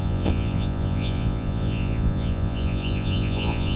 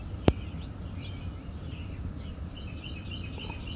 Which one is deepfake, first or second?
first